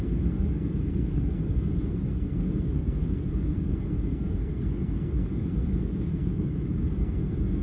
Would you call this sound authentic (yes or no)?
no